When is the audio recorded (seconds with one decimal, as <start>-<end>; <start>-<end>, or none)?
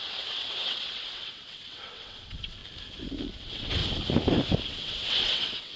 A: 2.6-3.4; 3.8-4.7